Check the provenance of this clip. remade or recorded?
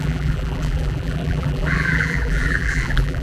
remade